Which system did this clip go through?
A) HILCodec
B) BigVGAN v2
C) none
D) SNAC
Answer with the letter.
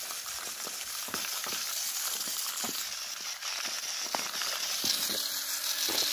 C